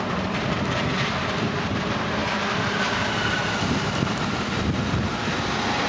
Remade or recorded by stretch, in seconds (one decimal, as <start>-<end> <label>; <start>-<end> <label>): 0.0-5.9 recorded